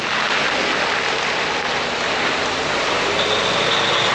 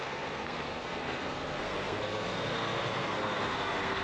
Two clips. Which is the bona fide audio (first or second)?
first